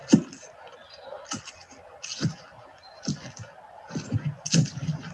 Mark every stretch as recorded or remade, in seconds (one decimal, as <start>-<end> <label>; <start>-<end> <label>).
0.0-5.1 recorded